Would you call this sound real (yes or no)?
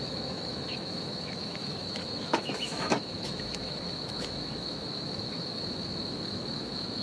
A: no